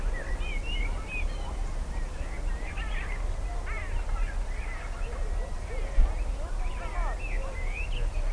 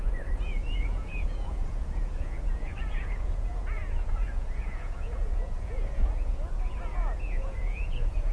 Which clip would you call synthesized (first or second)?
second